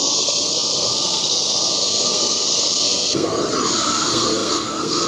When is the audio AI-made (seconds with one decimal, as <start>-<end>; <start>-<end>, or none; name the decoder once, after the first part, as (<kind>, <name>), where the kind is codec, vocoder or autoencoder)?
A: 0.0-3.3 (codec, SNAC); 3.9-5.1